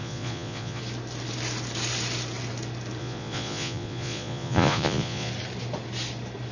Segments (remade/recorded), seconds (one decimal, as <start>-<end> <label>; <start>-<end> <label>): 0.0-0.8 remade; 0.8-3.0 recorded; 3.0-5.3 remade; 5.3-6.5 recorded